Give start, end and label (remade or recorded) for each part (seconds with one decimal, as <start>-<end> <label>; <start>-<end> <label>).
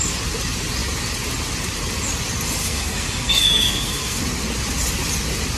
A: 0.0-2.6 recorded; 2.6-4.2 remade; 4.2-5.6 recorded